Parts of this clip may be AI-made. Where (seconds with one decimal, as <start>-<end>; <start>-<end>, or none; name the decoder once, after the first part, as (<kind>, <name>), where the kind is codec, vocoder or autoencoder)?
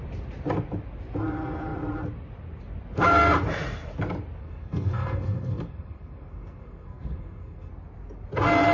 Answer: 4.4-7.7 (codec, SNAC)